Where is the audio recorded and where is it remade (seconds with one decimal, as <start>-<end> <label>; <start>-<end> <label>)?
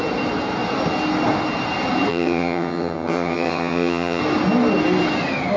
0.0-2.1 recorded; 2.1-4.2 remade; 4.2-5.6 recorded